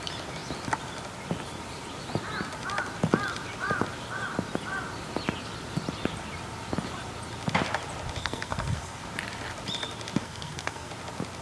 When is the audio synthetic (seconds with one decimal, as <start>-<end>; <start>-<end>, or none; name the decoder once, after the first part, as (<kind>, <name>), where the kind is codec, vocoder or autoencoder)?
8.2-9.0 (codec, SNAC); 10.2-10.9